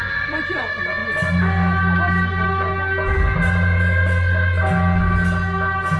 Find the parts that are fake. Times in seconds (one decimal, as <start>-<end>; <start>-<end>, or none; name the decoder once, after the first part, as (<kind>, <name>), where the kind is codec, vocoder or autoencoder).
none